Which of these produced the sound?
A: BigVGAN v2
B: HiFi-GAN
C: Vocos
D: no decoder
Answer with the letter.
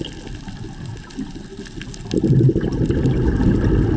D